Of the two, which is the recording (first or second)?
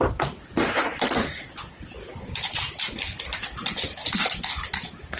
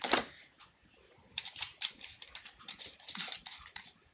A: first